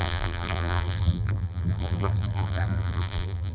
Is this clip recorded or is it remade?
remade